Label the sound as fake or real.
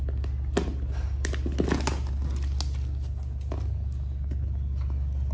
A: real